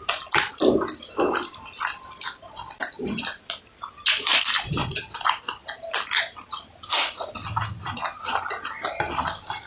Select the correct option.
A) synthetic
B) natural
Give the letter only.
B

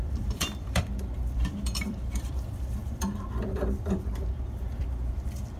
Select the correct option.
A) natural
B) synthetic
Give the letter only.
B